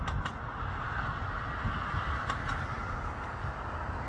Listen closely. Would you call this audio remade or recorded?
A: recorded